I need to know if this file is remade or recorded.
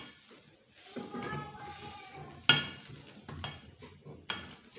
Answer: recorded